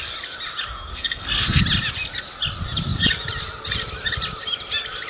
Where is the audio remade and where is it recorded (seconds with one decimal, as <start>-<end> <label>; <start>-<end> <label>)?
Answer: 0.0-0.9 recorded; 0.9-1.6 remade; 1.6-5.1 recorded